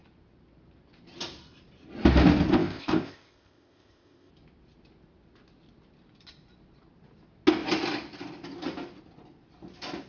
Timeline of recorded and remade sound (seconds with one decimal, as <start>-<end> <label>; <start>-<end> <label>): 0.0-2.5 recorded; 2.5-4.3 remade; 4.3-10.1 recorded